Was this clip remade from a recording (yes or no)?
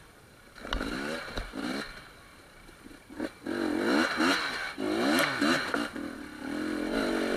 no